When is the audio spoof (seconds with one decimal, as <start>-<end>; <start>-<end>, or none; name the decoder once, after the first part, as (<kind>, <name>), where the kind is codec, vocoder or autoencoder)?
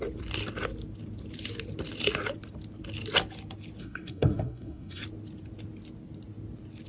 3.8-5.0 (codec, SNAC)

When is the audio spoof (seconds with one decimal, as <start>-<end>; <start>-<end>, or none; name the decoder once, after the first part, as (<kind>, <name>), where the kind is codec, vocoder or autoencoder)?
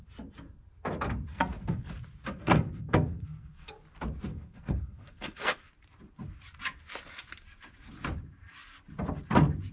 1.3-1.9 (codec, SNAC); 2.4-3.7; 4.3-5.7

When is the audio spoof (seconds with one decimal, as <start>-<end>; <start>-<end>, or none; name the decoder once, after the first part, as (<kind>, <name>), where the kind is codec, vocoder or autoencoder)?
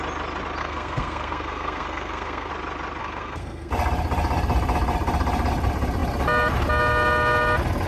0.6-2.5 (codec, SNAC); 3.0-3.7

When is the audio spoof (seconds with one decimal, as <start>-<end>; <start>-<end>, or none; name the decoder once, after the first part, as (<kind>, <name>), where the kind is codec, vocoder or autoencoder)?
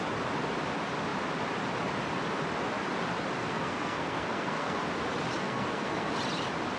3.4-4.8 (codec, SNAC); 5.4-6.1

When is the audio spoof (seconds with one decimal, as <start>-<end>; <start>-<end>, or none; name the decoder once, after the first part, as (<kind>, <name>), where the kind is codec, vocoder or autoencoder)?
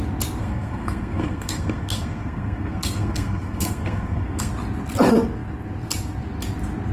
0.4-4.5 (codec, SNAC)